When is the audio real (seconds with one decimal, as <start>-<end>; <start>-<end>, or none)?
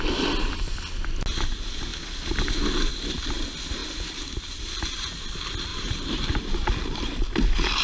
0.0-3.8; 4.6-5.7; 7.2-7.8